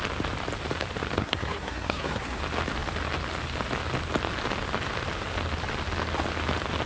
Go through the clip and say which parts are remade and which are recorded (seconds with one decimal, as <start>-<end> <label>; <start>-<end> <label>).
0.0-1.2 recorded; 1.2-2.4 remade; 2.4-6.9 recorded